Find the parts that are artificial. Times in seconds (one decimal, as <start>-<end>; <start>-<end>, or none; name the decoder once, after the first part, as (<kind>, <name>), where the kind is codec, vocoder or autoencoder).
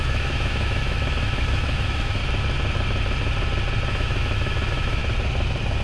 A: 0.0-2.2 (autoencoder, DAC-VAE); 3.9-5.0